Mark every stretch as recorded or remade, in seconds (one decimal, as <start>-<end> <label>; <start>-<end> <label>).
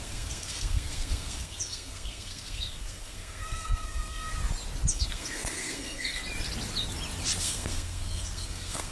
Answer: 0.0-4.3 remade; 4.3-4.9 recorded; 4.9-6.2 remade; 6.2-7.4 recorded; 7.4-8.9 remade